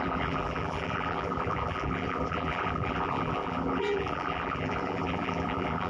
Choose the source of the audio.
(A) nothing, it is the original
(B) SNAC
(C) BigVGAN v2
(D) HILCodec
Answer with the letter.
C